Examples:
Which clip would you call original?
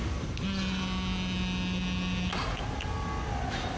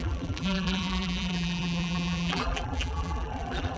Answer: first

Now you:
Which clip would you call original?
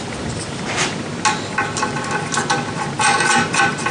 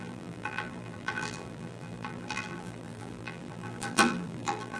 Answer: first